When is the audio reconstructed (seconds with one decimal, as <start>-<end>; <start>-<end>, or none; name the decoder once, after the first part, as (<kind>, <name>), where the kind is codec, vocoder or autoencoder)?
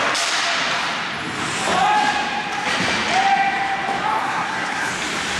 4.2-4.9 (codec, SNAC)